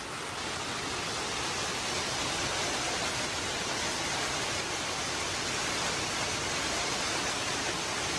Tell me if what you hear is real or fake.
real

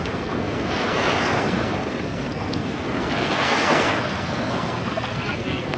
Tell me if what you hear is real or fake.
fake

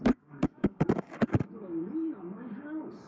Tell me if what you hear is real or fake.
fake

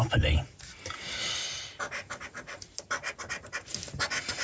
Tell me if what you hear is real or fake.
real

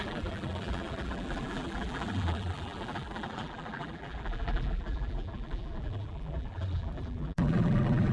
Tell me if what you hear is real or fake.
fake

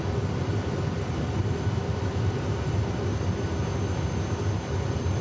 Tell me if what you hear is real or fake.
real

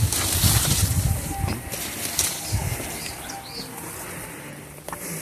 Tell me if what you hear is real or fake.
real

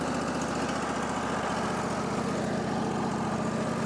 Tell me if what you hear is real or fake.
real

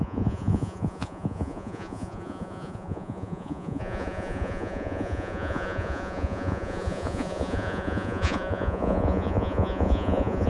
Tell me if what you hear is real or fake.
fake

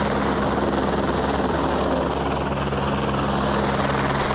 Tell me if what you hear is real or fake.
real